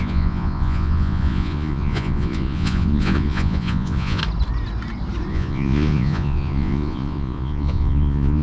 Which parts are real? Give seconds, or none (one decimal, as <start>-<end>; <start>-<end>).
4.2-5.3